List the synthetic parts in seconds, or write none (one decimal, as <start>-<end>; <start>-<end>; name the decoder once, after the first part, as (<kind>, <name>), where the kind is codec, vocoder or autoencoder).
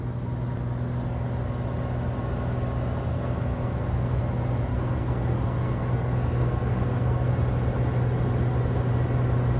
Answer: 3.1-4.2 (codec, SNAC); 4.7-7.3